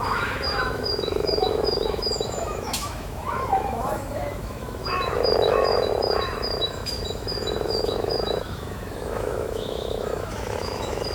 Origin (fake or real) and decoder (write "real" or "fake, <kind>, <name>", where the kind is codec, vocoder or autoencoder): fake, autoencoder, DAC-VAE